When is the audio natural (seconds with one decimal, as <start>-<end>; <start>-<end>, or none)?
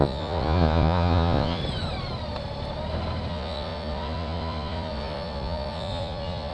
1.6-3.3